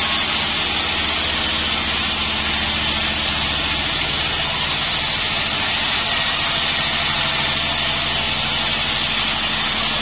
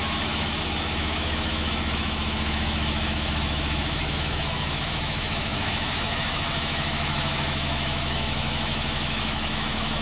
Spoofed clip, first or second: second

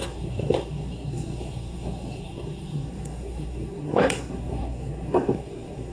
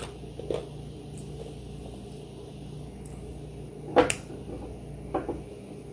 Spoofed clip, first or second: first